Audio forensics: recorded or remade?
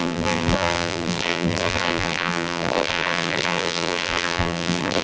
remade